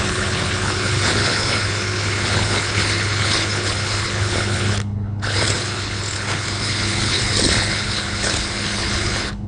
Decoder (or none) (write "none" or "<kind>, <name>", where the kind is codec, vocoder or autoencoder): codec, HILCodec